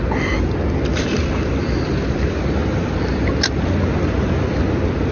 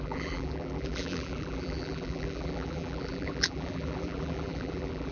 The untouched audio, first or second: first